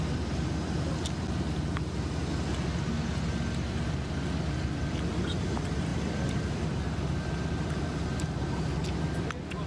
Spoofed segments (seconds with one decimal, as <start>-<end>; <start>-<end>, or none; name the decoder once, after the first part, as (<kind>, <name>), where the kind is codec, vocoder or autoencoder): none